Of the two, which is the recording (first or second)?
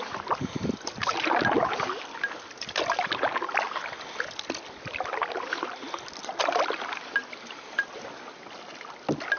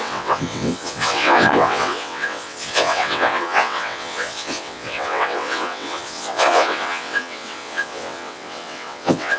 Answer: first